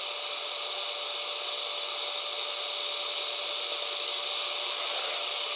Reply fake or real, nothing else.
real